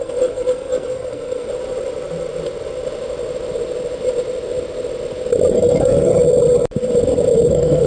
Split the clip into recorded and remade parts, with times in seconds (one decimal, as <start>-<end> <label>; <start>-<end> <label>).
0.0-1.5 remade; 1.5-5.5 recorded; 5.5-6.1 remade; 6.1-7.5 recorded; 7.5-7.9 remade